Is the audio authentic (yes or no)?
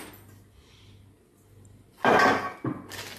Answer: yes